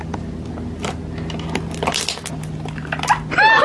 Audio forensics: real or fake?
real